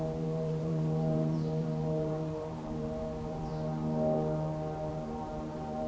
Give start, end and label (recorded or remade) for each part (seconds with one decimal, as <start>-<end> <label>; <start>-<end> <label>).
0.0-3.5 remade; 3.5-4.9 recorded; 4.9-5.9 remade